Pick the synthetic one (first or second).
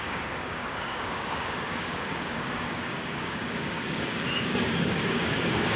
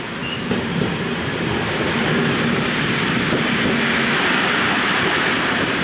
first